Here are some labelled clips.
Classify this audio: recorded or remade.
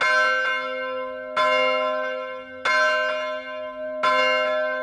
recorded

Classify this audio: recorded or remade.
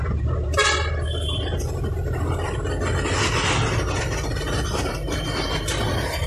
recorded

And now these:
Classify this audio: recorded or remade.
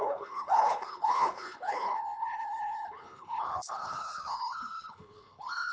remade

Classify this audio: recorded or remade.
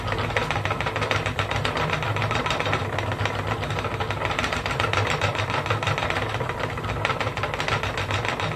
recorded